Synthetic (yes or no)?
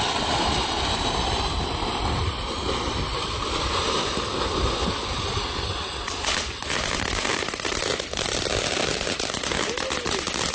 no